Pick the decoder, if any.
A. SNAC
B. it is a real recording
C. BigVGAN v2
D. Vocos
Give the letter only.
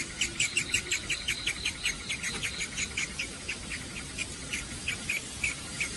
B